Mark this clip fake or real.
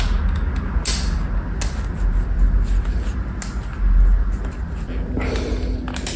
real